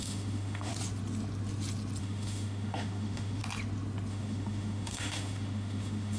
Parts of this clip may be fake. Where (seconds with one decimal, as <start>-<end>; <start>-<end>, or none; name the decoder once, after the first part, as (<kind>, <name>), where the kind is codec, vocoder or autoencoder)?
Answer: 0.0-0.7 (autoencoder, DAC-VAE); 2.0-3.4; 4.1-6.2